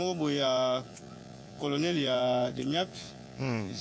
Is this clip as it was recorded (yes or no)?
no